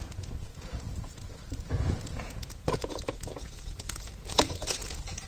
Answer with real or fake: fake